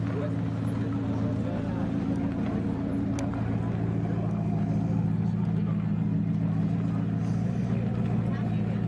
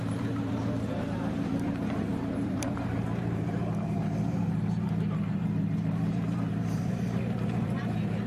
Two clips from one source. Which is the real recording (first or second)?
first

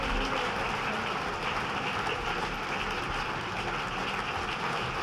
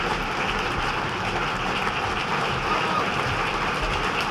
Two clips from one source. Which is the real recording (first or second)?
first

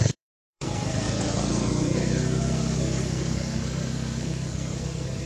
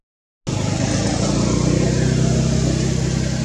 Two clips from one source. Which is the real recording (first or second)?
second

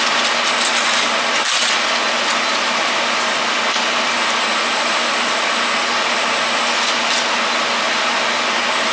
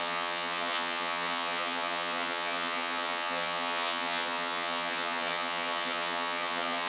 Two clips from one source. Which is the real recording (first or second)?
first